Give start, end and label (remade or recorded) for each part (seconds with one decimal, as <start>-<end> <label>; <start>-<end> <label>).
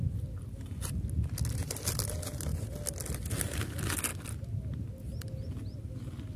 0.0-6.4 recorded